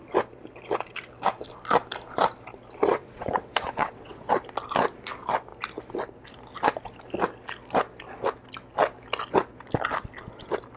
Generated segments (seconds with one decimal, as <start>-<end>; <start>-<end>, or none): 2.8-4.3